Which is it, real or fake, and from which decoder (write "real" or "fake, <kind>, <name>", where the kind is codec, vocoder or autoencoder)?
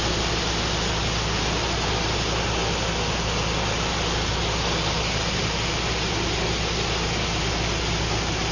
real